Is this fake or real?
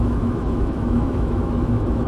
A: fake